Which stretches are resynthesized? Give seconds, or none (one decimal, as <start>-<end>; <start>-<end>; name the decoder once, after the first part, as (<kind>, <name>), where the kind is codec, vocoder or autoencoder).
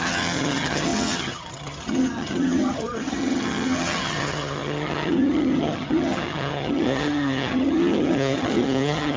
0.0-9.2 (vocoder, HiFi-GAN)